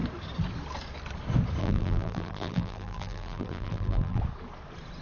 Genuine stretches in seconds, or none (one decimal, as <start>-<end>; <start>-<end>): 0.0-1.6; 4.2-5.0